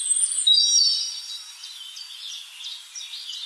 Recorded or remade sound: recorded